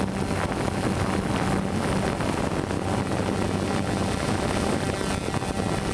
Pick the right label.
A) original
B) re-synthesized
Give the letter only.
A